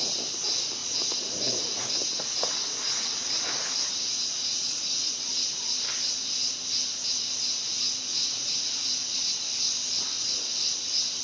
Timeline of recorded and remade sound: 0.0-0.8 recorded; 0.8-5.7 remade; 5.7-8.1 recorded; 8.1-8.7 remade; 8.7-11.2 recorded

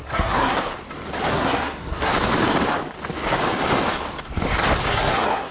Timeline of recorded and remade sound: 0.0-0.7 remade; 0.7-1.3 recorded; 1.3-2.1 remade; 2.1-4.9 recorded; 4.9-5.5 remade

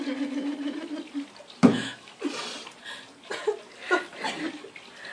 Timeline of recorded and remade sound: 0.0-1.6 recorded; 1.6-2.2 remade; 2.2-5.1 recorded

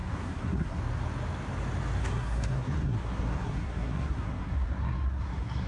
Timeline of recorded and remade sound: 0.0-0.8 remade; 0.8-2.0 recorded; 2.0-5.7 remade

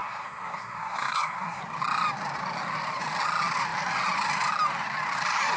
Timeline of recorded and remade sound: 0.0-1.6 remade; 1.6-5.6 recorded

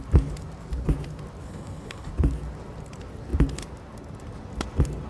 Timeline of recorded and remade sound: 0.0-1.4 recorded; 1.4-2.1 remade; 2.1-5.1 recorded

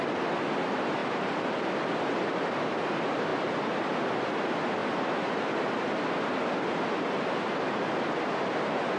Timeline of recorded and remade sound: 0.0-1.0 recorded; 1.0-2.6 remade; 2.6-9.0 recorded